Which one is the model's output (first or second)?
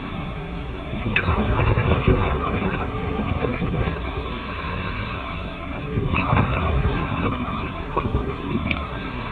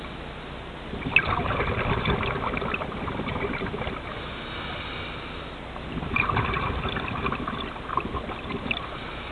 first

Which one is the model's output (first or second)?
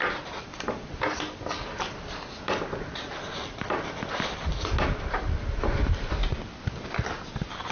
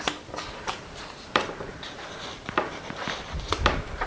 second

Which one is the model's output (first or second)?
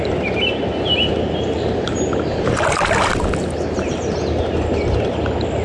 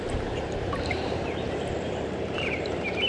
second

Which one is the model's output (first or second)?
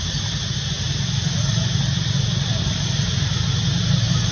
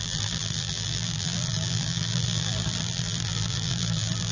second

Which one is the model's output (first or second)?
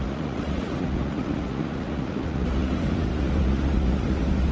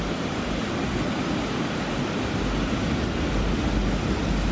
first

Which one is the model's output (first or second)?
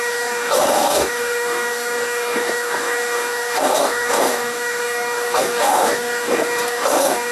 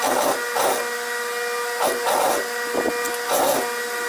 first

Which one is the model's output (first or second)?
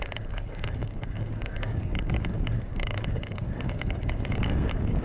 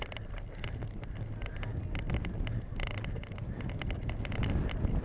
first